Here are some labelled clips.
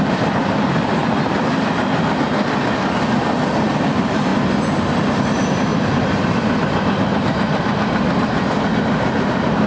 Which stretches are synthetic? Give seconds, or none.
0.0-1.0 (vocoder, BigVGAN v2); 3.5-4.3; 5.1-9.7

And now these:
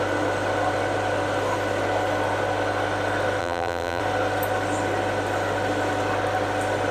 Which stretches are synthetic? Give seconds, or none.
3.4-4.0 (vocoder, BigVGAN v2)

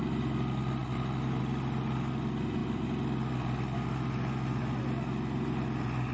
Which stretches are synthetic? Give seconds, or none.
none

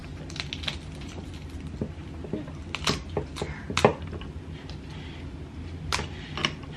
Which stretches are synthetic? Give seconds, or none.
3.9-4.4 (vocoder, BigVGAN v2)

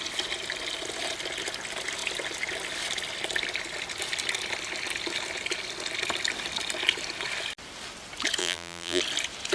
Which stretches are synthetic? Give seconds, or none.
8.4-9.0 (vocoder, BigVGAN v2)

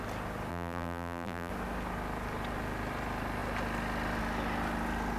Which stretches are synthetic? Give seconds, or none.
0.5-1.5 (vocoder, BigVGAN v2)